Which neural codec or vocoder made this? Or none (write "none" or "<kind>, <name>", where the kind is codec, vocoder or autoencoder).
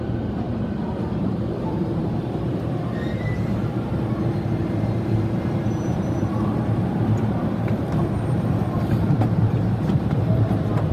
vocoder, BigVGAN v2